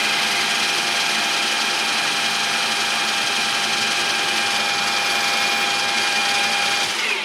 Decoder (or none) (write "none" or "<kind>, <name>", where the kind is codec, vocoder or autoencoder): none